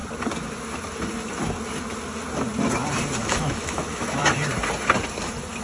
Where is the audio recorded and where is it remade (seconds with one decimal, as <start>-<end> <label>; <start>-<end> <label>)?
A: 0.0-3.2 recorded; 3.2-4.2 remade; 4.2-5.6 recorded